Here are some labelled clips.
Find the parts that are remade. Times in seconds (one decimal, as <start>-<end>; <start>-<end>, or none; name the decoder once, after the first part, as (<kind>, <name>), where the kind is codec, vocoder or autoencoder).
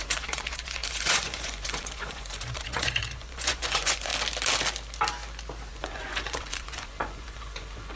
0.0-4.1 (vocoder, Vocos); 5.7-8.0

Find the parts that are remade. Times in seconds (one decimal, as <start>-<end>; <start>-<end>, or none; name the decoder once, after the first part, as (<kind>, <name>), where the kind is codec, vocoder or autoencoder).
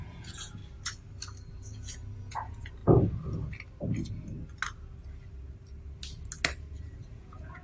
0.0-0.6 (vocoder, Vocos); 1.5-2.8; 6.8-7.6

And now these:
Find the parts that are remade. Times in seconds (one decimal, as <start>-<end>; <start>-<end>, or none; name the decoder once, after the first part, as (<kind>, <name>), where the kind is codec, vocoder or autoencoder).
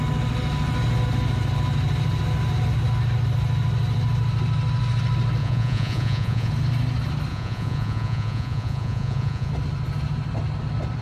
5.4-6.5 (vocoder, Vocos); 7.3-9.5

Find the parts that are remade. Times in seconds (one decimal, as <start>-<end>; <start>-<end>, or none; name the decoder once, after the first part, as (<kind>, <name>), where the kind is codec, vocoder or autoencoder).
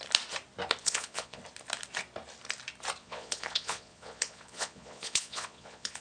0.8-1.4 (vocoder, Vocos); 3.0-6.0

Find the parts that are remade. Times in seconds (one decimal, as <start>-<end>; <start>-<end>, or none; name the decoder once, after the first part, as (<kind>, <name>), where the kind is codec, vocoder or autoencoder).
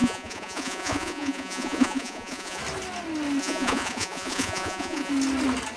0.0-2.6 (vocoder, Vocos); 3.4-5.1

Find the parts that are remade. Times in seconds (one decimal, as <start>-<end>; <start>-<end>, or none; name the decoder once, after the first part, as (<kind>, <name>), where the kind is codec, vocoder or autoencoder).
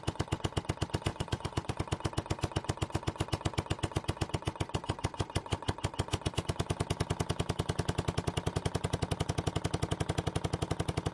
1.1-1.8 (vocoder, Vocos)